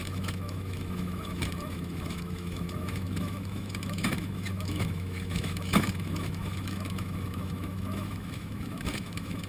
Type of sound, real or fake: fake